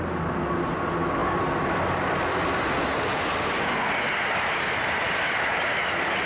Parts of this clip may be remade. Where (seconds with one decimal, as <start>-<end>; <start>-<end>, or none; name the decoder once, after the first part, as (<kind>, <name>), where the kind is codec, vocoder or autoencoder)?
none